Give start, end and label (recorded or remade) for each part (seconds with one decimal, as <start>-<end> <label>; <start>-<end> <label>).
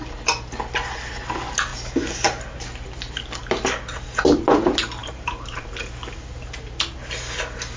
0.0-5.0 recorded; 5.0-5.7 remade; 5.7-7.8 recorded